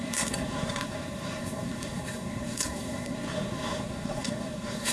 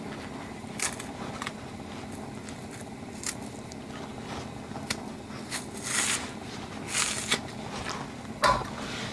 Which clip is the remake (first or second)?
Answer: first